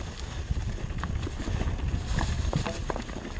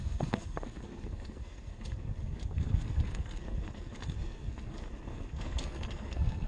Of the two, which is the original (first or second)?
first